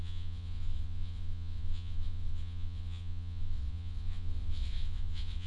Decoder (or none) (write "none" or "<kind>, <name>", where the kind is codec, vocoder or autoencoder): vocoder, WaveNeXt